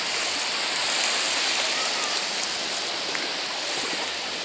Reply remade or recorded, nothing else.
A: recorded